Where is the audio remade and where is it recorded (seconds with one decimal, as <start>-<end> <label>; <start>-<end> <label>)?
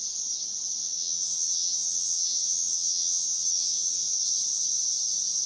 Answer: 0.0-0.8 recorded; 0.8-4.1 remade; 4.1-5.5 recorded